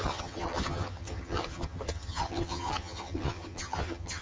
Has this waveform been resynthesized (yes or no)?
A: yes